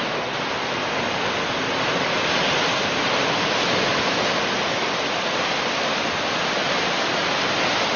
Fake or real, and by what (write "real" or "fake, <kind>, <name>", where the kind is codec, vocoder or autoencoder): real